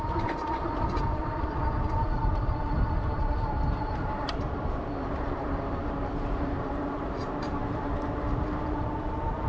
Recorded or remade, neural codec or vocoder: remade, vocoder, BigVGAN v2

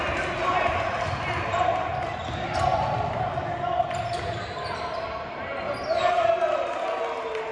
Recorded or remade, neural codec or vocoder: recorded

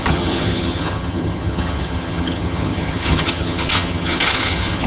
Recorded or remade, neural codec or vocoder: remade, vocoder, HiFi-GAN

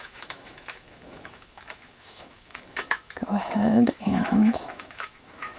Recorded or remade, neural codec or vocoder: remade, autoencoder, DAC-VAE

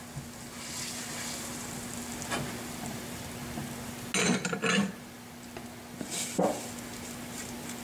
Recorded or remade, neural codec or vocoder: recorded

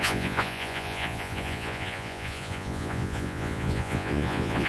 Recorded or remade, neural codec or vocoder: remade, vocoder, Vocos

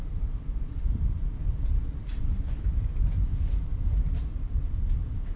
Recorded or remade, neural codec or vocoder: recorded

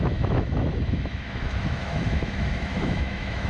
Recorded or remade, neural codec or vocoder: remade, autoencoder, DAC-VAE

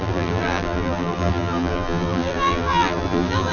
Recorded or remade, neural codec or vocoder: remade, vocoder, BigVGAN v2